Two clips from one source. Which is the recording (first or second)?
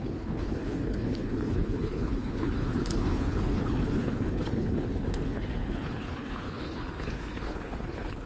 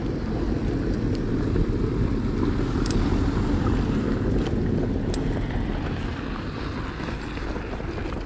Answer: second